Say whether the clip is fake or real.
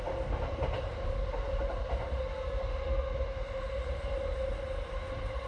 real